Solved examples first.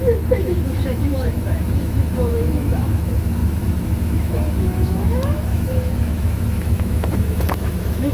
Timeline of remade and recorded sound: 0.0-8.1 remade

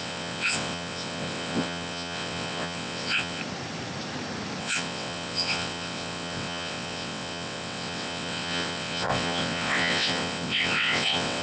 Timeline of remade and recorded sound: 0.0-3.4 remade; 3.4-4.6 recorded; 4.6-11.4 remade

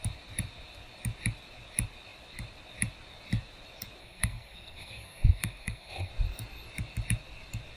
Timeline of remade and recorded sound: 0.0-4.0 recorded; 4.0-6.1 remade; 6.1-7.8 recorded

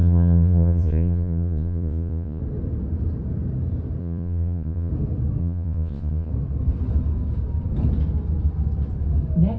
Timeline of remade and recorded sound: 0.0-2.4 remade; 2.4-4.0 recorded; 4.0-4.9 remade; 4.9-5.4 recorded; 5.4-6.3 remade; 6.3-9.6 recorded

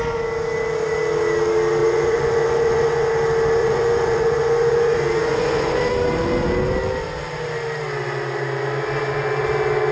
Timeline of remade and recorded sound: 0.0-1.8 recorded; 1.8-3.1 remade; 3.1-3.6 recorded; 3.6-5.7 remade; 5.7-9.9 recorded